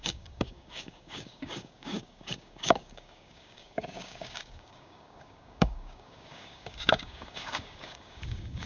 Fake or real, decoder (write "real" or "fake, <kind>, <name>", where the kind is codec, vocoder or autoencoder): fake, codec, DAC